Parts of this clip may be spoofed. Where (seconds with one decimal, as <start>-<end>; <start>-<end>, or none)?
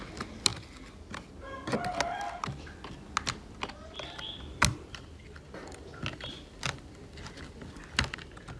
none